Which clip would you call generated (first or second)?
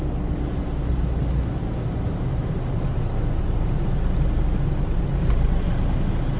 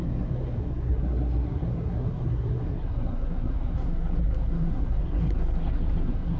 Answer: second